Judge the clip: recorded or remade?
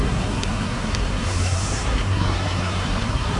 remade